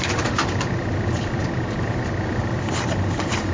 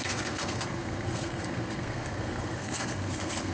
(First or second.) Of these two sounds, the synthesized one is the second